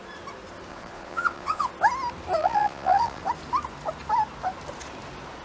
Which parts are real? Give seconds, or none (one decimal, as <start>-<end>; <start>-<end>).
0.0-0.7; 1.7-2.4; 3.2-5.4